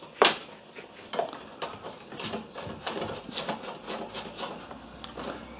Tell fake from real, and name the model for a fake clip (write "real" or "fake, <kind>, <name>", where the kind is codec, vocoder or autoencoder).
real